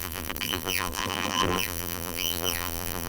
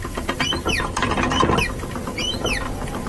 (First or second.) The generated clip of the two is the first